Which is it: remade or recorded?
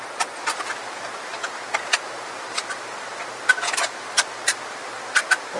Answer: recorded